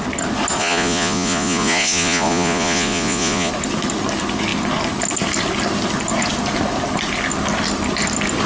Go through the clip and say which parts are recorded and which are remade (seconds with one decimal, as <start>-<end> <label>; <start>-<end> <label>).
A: 0.0-0.6 recorded; 0.6-3.5 remade; 3.5-8.5 recorded